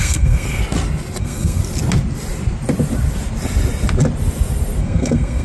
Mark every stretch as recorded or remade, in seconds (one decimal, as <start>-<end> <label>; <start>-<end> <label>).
0.0-0.6 remade; 0.6-1.2 recorded; 1.2-1.6 remade; 1.6-4.8 recorded; 4.8-5.4 remade